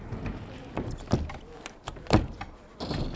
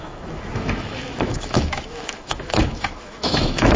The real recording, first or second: first